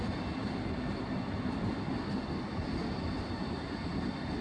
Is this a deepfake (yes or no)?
no